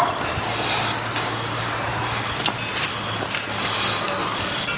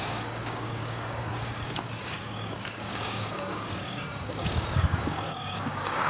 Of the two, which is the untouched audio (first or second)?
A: first